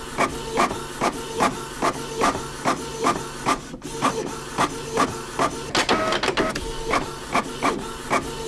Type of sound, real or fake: real